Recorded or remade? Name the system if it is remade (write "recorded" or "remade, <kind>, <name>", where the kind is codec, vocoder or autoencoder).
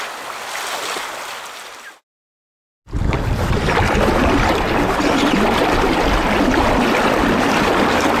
recorded